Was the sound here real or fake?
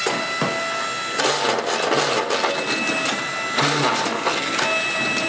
real